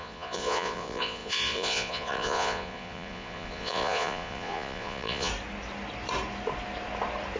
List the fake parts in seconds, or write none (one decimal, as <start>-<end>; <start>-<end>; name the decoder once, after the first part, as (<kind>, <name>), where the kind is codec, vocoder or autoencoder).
0.0-5.3 (vocoder, Vocos)